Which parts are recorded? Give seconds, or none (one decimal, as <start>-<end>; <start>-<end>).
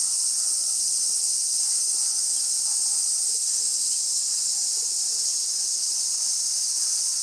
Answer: 0.0-5.8